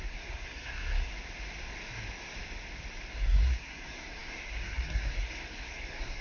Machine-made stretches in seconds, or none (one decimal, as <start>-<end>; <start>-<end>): 0.0-1.1; 3.2-6.2